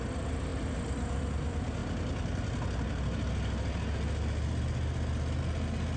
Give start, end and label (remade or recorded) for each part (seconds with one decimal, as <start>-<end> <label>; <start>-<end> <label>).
0.0-6.0 recorded